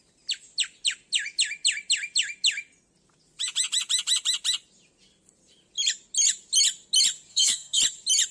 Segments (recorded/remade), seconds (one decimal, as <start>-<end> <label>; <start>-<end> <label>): 0.0-7.3 recorded; 7.3-7.8 remade; 7.8-8.3 recorded